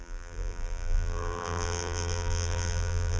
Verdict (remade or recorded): remade